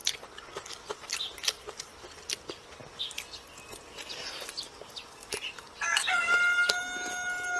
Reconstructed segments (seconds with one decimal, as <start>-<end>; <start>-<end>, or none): none